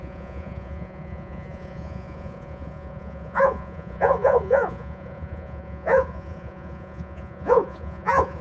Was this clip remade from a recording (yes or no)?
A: yes